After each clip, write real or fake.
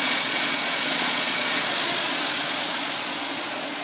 fake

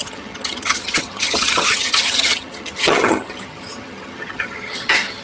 fake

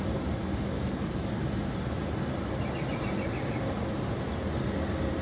real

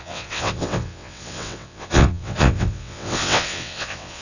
fake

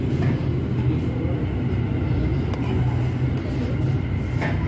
real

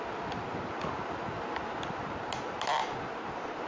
real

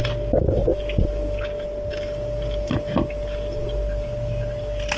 real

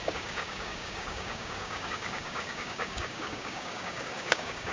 fake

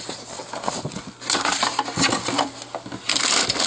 real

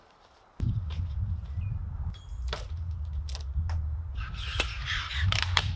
fake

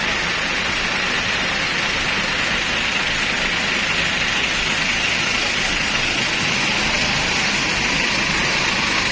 real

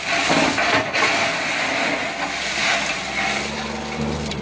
real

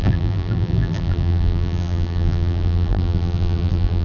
fake